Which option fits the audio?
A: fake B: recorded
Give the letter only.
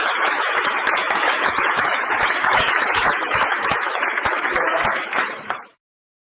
A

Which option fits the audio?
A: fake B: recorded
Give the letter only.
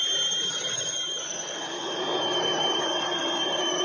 B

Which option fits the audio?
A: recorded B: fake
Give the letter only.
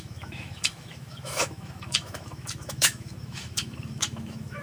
B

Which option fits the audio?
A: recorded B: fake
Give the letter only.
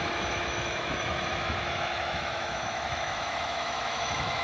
B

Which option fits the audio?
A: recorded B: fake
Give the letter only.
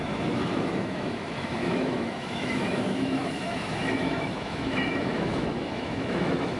B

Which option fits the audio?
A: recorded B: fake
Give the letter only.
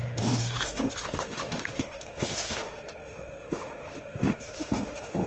B